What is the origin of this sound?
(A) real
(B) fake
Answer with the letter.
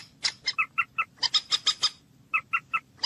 A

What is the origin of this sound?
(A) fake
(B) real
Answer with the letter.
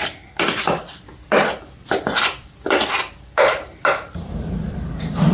A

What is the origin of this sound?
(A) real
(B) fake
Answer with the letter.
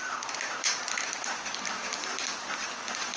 B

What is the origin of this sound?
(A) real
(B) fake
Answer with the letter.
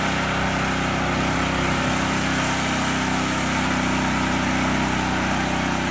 A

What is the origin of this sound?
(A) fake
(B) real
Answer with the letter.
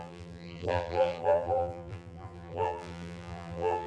A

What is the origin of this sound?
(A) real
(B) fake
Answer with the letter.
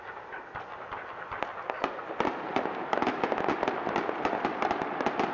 A